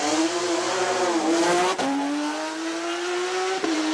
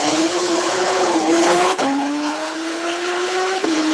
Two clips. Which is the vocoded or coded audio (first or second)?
second